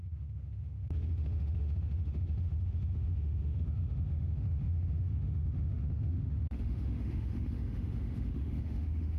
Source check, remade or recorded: remade